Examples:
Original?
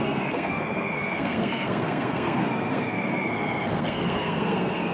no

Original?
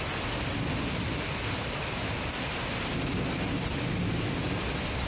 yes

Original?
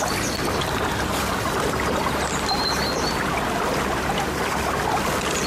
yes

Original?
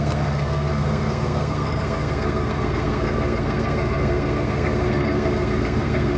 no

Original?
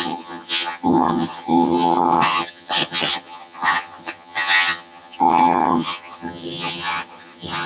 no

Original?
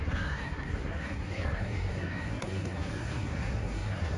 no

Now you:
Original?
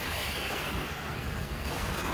no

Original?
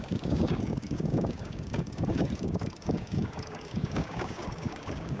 no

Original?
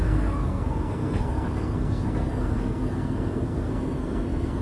no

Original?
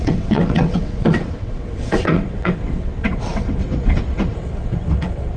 no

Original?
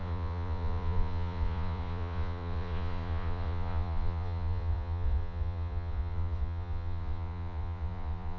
no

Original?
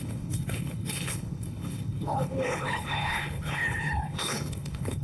no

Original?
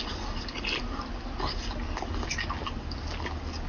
yes